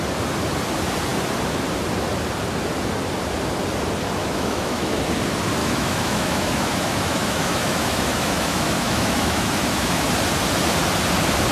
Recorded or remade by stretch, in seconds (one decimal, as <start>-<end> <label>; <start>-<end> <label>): 0.0-4.2 recorded; 4.2-5.0 remade; 5.0-5.6 recorded; 5.6-10.1 remade; 10.1-11.5 recorded